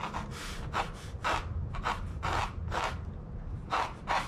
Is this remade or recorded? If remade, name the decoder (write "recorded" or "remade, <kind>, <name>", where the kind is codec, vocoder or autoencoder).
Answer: recorded